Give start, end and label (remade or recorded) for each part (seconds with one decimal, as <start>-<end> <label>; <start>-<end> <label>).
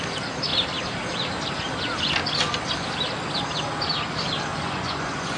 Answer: 0.0-4.5 recorded; 4.5-5.4 remade